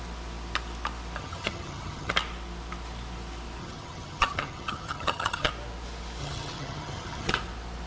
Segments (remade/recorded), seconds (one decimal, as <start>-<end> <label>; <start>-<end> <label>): 0.0-1.2 recorded; 1.2-2.1 remade; 2.1-3.6 recorded; 3.6-5.5 remade; 5.5-6.2 recorded; 6.2-7.3 remade; 7.3-7.9 recorded